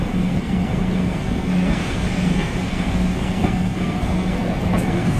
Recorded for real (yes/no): no